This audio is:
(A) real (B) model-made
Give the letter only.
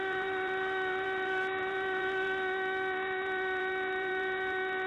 B